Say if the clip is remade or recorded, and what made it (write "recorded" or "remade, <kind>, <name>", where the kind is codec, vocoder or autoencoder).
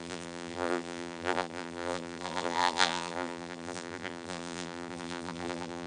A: remade, vocoder, BigVGAN v2